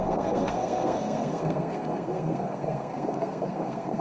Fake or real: fake